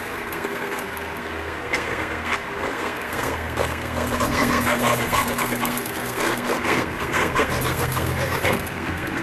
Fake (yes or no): yes